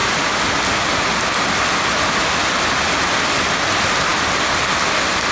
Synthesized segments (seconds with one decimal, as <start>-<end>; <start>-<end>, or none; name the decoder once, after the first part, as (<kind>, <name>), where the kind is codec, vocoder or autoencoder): none